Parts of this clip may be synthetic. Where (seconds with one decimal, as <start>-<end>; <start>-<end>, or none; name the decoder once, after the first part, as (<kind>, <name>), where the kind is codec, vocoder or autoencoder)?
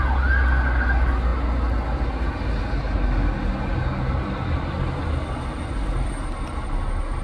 none